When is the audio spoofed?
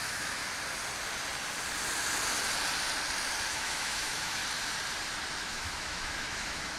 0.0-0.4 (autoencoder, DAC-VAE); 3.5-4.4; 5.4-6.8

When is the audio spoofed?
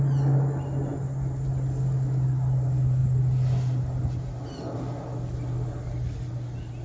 none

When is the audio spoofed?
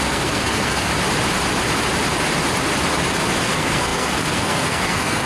0.0-0.9 (codec, SNAC); 3.4-5.3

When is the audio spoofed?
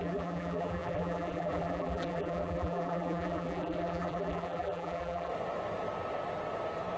0.0-5.3 (vocoder, BigVGAN v2)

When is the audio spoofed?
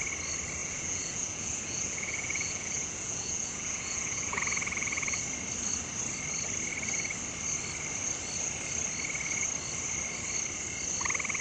0.6-5.2 (vocoder, Vocos)